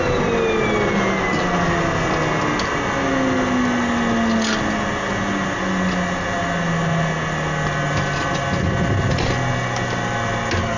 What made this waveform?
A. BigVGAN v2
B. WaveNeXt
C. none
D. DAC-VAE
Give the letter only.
C